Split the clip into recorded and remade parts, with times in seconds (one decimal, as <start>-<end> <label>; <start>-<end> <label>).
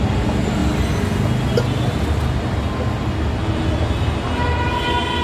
0.0-5.2 recorded